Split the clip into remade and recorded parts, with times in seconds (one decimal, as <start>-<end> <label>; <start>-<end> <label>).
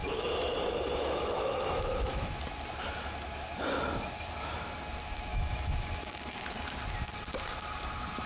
0.0-2.4 remade; 2.4-5.3 recorded; 5.3-6.1 remade; 6.1-8.3 recorded